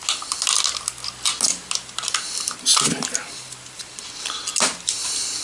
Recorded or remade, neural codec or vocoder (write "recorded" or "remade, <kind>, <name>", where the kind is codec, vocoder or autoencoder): recorded